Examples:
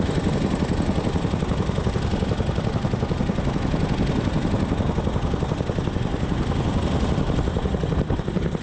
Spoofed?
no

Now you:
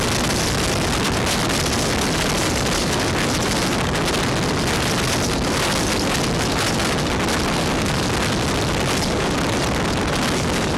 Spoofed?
no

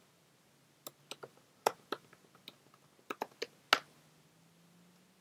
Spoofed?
no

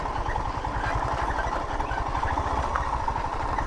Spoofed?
no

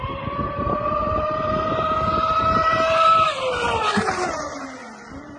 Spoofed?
yes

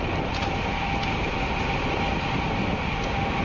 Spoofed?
no